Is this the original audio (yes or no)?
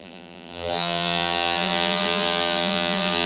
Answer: no